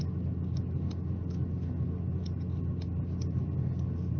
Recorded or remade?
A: recorded